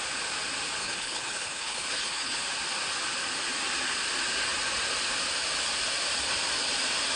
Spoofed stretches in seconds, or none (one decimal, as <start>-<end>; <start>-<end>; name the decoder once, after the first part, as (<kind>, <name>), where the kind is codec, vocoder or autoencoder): 0.8-2.4 (codec, HILCodec)